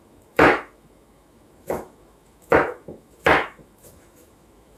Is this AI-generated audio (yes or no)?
yes